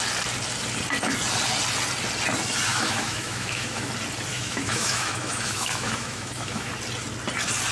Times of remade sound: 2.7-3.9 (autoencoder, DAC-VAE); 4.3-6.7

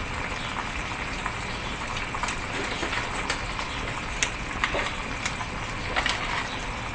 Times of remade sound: none